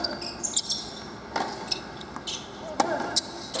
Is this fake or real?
real